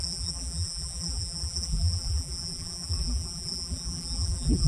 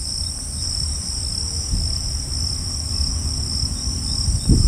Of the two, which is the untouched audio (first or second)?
second